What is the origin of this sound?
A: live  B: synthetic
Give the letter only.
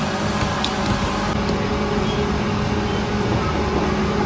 A